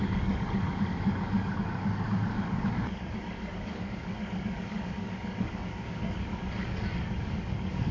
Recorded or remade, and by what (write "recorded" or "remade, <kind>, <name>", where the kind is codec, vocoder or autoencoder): remade, codec, DAC